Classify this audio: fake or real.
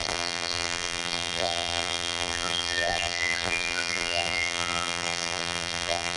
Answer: fake